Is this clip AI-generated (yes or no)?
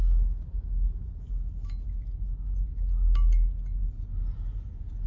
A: no